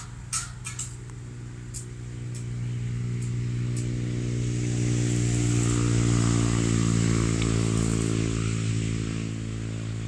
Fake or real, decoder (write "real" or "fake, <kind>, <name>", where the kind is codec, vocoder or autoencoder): real